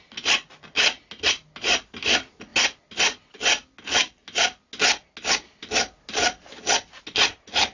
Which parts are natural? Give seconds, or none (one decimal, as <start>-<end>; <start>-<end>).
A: 0.0-7.7